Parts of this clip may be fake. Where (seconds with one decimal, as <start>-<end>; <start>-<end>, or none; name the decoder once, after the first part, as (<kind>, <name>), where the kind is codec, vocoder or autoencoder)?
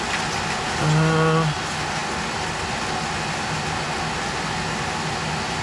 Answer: none